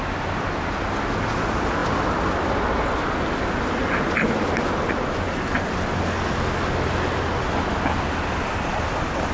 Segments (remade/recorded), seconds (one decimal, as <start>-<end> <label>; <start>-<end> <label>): 0.0-9.3 recorded